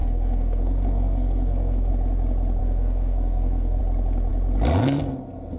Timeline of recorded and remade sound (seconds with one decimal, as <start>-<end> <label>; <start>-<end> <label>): 0.0-1.9 remade; 1.9-2.6 recorded; 2.6-3.8 remade; 3.8-5.6 recorded